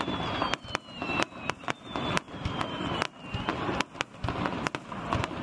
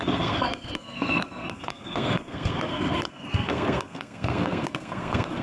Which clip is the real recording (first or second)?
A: first